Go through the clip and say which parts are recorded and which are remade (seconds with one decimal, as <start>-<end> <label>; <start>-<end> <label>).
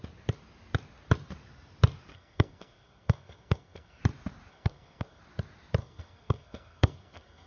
0.0-2.1 recorded; 2.1-4.0 remade; 4.0-4.5 recorded; 4.5-5.2 remade; 5.2-5.8 recorded; 5.8-7.5 remade